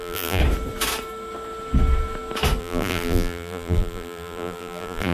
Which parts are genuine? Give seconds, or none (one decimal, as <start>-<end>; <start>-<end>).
0.4-2.6